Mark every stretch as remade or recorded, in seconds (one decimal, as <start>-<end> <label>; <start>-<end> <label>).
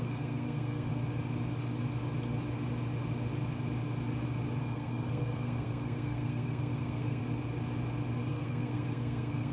0.0-0.9 remade; 0.9-4.6 recorded; 4.6-7.2 remade; 7.2-8.3 recorded; 8.3-9.5 remade